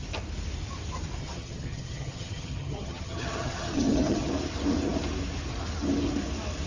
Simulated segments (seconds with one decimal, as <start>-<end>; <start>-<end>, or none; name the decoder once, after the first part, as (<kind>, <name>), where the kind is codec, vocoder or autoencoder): 1.2-4.3 (vocoder, HiFi-GAN)

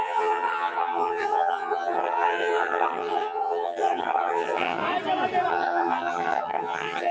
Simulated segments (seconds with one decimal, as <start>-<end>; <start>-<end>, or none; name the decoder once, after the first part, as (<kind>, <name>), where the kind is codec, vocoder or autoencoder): 0.0-4.8 (vocoder, HiFi-GAN); 5.5-7.1

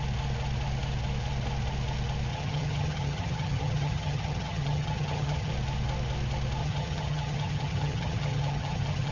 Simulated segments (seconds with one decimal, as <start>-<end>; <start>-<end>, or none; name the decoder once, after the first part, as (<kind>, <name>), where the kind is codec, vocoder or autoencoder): 2.3-5.5 (vocoder, HiFi-GAN); 6.6-9.1

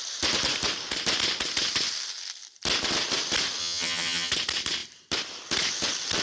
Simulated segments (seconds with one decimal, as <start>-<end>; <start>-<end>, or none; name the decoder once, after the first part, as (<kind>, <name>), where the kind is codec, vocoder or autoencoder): 3.6-4.3 (vocoder, HiFi-GAN)

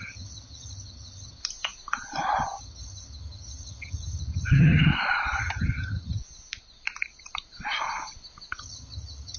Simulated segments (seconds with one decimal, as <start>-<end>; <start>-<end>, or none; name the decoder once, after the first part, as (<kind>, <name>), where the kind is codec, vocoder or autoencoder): 0.0-1.4 (vocoder, HiFi-GAN); 2.6-4.9; 5.4-6.2; 8.6-9.4